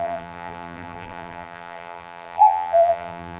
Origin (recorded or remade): remade